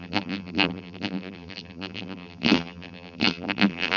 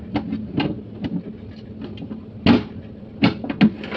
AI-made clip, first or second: first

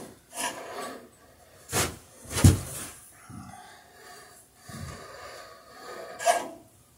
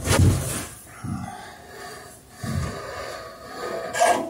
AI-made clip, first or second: first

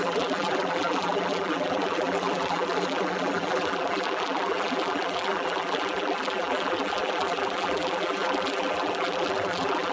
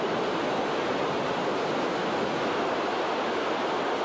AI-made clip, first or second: first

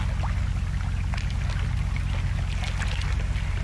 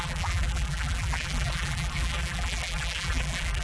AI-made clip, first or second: second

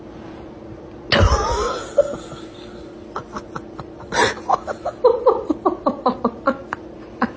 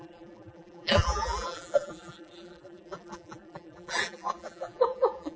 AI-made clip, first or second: second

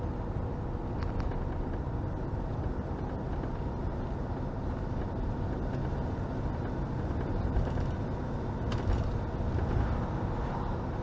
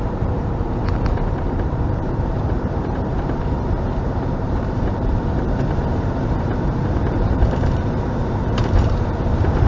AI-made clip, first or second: second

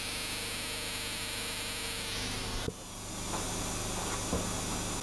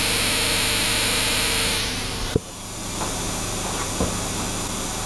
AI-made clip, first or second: second